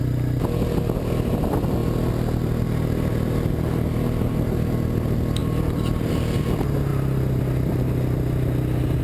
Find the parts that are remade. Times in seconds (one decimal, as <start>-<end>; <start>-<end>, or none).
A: none